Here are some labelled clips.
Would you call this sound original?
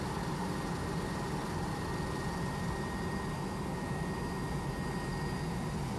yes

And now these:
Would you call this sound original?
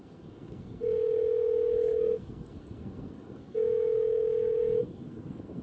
no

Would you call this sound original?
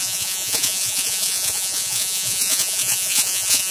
no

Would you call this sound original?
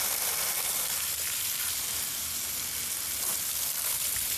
no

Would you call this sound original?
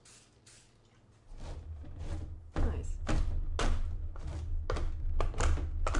yes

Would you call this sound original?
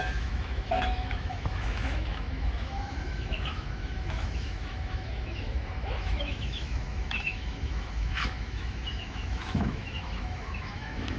no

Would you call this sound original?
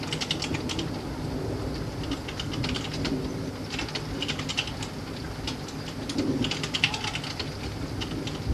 yes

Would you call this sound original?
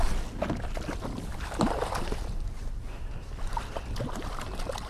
yes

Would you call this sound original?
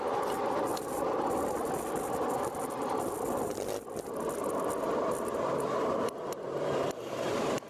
yes